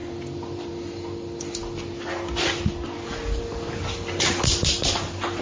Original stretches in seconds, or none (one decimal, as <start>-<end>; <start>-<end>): 0.0-5.4